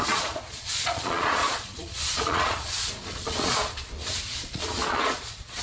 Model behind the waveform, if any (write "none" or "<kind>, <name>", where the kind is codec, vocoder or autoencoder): vocoder, Vocos